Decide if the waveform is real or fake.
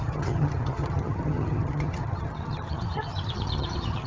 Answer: fake